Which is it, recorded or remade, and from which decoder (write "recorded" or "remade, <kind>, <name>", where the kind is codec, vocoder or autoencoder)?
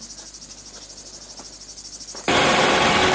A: recorded